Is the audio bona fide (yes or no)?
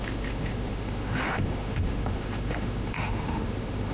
no